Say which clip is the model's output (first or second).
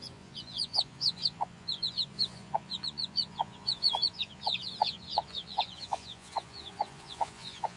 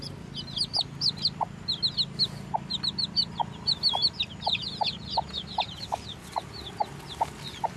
first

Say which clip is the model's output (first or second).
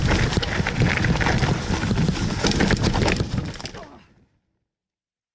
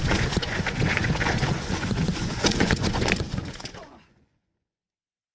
second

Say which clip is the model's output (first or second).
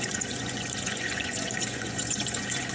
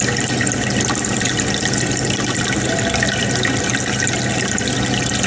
first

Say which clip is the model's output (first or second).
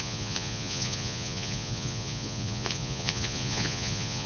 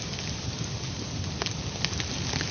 first